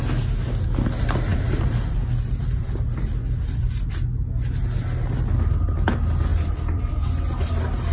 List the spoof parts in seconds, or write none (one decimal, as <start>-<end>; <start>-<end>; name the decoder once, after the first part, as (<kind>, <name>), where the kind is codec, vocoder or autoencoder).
1.3-3.9 (vocoder, BigVGAN v2); 6.3-6.9